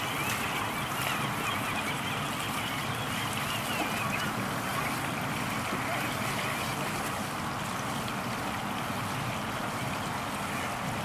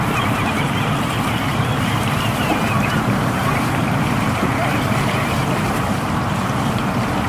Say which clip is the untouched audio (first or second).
first